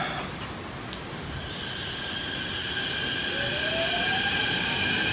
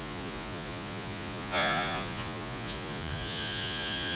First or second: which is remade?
second